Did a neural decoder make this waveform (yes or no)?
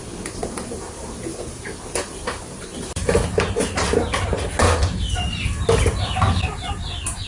no